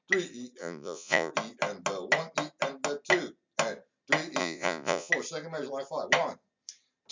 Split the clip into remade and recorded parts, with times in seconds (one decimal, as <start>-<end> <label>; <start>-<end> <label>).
0.0-0.6 recorded; 0.6-1.3 remade; 1.3-4.4 recorded; 4.4-5.1 remade; 5.1-7.1 recorded